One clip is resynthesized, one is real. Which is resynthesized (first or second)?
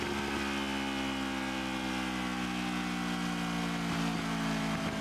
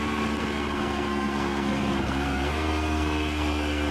second